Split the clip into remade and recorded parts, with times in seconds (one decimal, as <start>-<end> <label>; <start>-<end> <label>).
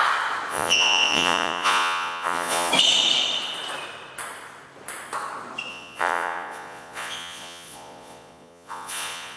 0.0-0.5 recorded; 0.5-2.7 remade; 2.7-5.7 recorded; 5.7-9.4 remade